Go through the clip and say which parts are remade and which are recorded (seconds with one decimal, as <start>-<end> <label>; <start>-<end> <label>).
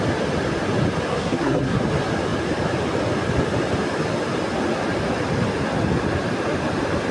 0.0-1.1 recorded; 1.1-1.8 remade; 1.8-7.1 recorded